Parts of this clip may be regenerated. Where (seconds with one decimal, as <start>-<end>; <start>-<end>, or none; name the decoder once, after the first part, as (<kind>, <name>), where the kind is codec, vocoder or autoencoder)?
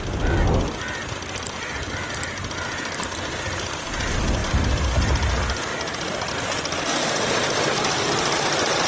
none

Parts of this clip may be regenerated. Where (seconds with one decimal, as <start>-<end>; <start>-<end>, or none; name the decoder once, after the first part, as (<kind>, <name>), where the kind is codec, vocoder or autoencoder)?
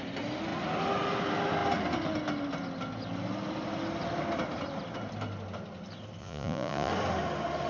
6.2-6.9 (vocoder, Vocos)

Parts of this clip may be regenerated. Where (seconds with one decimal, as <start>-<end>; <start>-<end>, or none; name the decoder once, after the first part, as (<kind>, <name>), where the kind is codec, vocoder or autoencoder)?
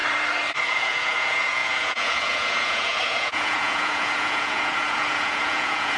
0.6-6.0 (vocoder, Vocos)